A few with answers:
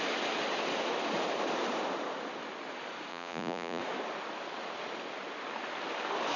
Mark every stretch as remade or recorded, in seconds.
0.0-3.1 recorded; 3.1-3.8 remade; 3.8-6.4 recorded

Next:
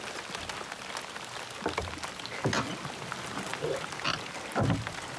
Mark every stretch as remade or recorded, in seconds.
0.0-5.2 recorded

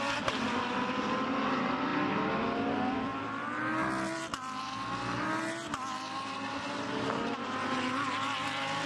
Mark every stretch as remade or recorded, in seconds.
0.0-8.9 recorded

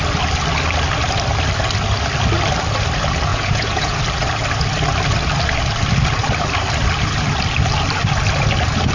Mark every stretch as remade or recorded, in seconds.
0.0-3.3 recorded; 3.3-4.0 remade; 4.0-8.9 recorded

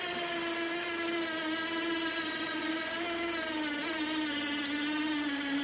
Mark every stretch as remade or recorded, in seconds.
0.0-2.0 recorded; 2.0-2.9 remade; 2.9-5.6 recorded

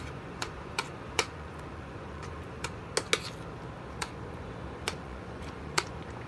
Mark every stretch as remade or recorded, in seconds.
0.0-2.8 remade; 2.8-4.0 recorded; 4.0-6.3 remade